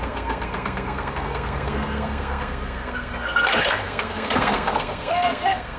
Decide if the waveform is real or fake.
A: fake